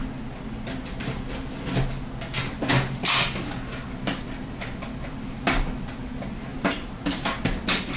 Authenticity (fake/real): real